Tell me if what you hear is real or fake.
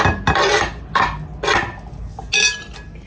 real